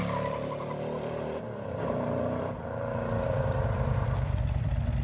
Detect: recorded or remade remade